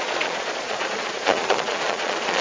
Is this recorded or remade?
remade